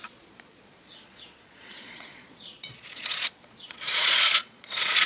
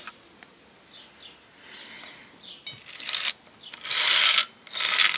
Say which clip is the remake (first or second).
first